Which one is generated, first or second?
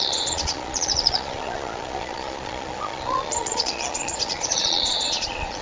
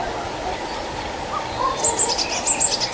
first